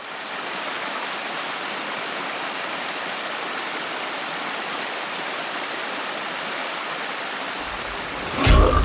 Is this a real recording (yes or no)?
yes